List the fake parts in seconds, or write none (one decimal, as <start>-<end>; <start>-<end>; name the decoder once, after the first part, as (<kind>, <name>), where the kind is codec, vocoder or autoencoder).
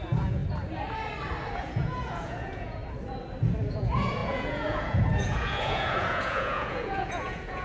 0.0-0.4 (vocoder, Vocos); 1.5-2.8; 3.7-7.6